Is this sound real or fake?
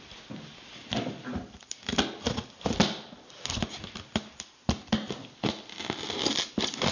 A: real